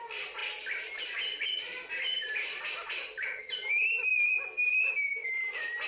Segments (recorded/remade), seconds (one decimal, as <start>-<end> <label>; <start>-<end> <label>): 0.0-5.9 recorded